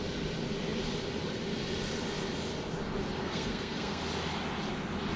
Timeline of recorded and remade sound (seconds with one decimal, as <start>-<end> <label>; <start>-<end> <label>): 0.0-3.2 recorded; 3.2-4.0 remade; 4.0-5.2 recorded